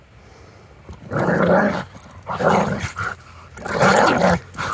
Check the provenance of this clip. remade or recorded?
recorded